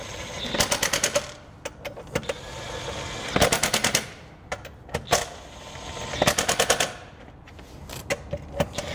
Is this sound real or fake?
real